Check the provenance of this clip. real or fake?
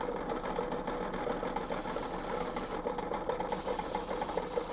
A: real